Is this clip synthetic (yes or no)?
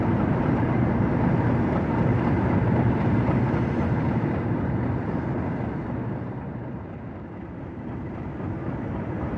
yes